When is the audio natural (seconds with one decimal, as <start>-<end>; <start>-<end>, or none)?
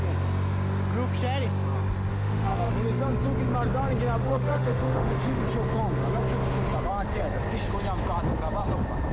0.0-2.1; 2.7-4.2; 5.4-9.1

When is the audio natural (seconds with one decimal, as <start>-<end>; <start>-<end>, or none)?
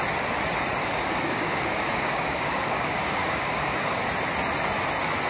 0.0-0.8; 4.0-5.3